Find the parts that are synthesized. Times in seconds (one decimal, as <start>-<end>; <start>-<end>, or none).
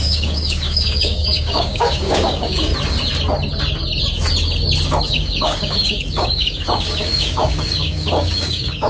0.0-2.7; 5.0-8.9